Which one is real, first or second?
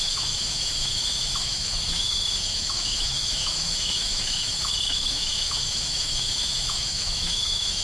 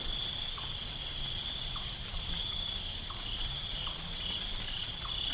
second